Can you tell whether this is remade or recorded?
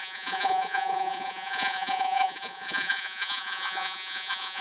remade